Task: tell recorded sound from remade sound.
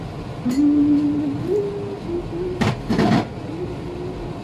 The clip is recorded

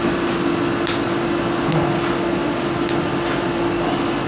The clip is recorded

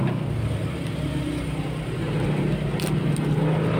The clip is recorded